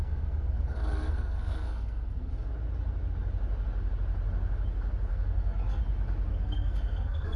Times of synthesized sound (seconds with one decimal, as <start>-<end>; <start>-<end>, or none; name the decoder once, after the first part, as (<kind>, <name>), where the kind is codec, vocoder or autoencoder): 0.0-2.3 (codec, SNAC); 5.1-5.8; 6.3-7.4